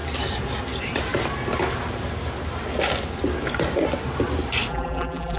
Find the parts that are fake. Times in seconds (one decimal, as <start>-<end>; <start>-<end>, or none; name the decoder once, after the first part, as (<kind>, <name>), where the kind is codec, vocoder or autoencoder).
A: 4.7-5.4 (vocoder, BigVGAN v2)